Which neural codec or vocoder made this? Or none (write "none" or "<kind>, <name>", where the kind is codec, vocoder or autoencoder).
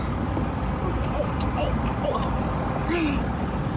none